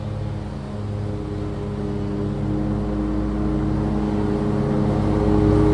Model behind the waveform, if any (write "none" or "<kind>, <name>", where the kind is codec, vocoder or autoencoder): none